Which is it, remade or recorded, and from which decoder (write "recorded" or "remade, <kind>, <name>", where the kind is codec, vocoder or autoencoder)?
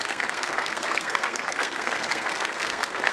remade, codec, SNAC